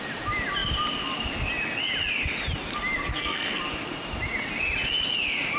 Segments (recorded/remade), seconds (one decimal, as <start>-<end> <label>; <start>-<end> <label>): 0.0-3.1 recorded; 3.1-3.6 remade; 3.6-5.6 recorded